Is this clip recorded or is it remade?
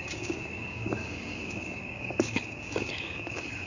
remade